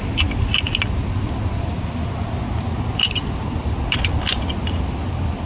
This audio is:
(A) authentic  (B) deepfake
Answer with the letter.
A